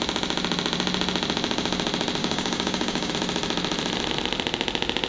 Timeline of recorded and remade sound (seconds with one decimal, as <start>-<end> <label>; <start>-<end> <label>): 0.0-2.2 recorded; 2.2-3.1 remade; 3.1-5.1 recorded